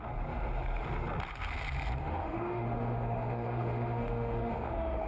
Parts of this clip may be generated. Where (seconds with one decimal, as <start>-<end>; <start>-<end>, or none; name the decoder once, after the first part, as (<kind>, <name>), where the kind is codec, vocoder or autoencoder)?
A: 2.0-5.1 (autoencoder, DAC-VAE)